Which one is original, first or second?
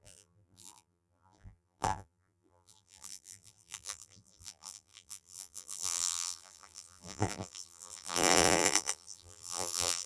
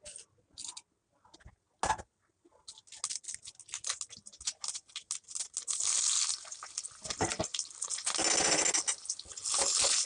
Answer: second